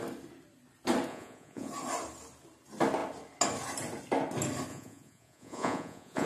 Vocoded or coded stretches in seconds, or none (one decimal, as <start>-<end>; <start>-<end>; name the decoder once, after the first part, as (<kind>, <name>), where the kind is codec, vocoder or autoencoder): 1.1-1.7 (vocoder, Vocos); 4.7-6.3